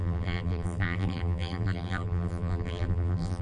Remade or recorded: remade